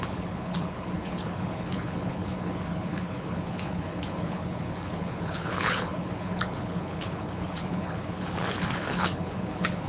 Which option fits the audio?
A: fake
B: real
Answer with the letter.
A